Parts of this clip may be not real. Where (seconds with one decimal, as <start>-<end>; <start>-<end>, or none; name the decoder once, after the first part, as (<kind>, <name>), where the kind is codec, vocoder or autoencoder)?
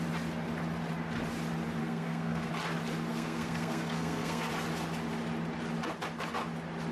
1.8-2.5 (codec, SNAC); 3.1-4.5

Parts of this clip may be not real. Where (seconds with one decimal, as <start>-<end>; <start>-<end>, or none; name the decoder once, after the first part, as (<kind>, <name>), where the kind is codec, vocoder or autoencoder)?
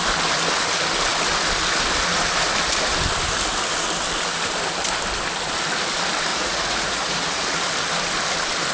6.3-7.7 (vocoder, Vocos)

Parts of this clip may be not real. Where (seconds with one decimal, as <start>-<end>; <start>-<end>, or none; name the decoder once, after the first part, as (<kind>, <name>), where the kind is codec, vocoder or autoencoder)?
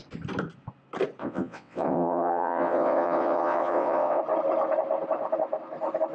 1.2-4.2 (vocoder, WaveNeXt)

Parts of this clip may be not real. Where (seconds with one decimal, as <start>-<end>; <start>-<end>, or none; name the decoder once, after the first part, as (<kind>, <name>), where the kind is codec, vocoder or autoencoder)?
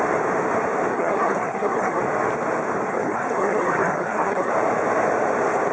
0.9-2.0 (codec, SNAC); 2.9-4.5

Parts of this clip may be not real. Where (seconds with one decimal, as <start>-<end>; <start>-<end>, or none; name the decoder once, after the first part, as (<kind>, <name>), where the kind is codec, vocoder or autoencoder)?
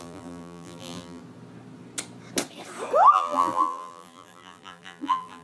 0.0-1.2 (vocoder, BigVGAN v2); 3.1-5.4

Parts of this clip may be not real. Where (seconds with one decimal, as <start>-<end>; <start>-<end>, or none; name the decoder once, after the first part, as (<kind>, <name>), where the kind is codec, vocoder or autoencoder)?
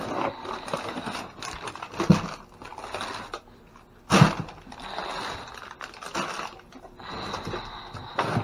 none